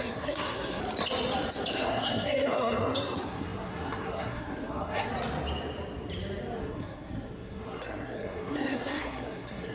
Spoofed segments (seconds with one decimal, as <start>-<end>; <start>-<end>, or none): 0.0-0.8; 1.7-5.1; 6.6-9.7